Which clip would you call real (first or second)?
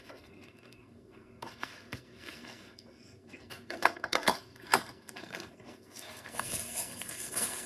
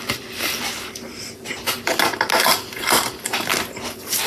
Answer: second